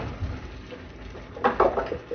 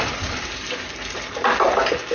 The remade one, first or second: second